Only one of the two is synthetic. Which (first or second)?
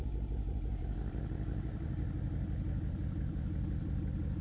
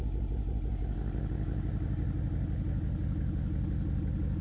first